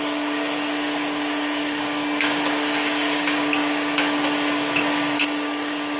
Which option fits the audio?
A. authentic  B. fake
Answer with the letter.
B